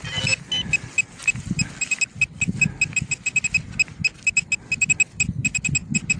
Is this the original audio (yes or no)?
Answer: yes